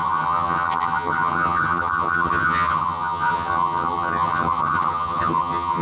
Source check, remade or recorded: remade